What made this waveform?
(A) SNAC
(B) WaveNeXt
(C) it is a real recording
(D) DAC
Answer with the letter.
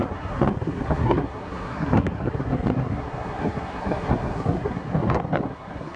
A